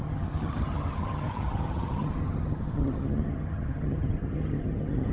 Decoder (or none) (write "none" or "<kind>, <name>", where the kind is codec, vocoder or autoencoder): vocoder, HiFi-GAN